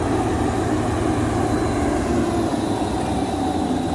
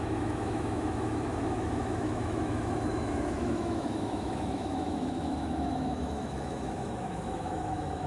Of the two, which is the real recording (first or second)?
first